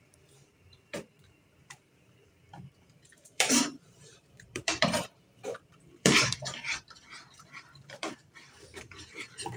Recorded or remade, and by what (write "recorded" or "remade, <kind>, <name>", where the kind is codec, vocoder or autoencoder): remade, vocoder, BigVGAN v2